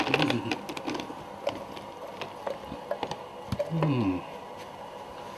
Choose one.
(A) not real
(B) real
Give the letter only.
B